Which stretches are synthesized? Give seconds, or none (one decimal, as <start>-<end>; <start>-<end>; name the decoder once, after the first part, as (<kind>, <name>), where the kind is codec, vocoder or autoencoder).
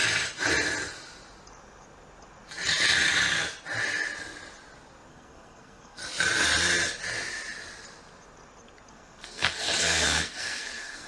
5.1-6.0 (codec, SNAC); 8.9-11.1